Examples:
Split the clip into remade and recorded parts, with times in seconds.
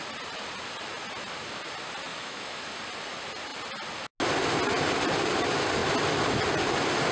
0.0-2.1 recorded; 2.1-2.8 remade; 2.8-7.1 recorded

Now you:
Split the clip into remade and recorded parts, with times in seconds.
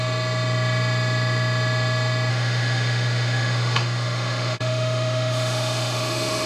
0.0-2.3 recorded; 2.3-6.5 remade